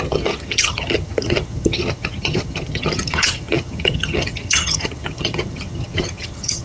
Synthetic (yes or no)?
yes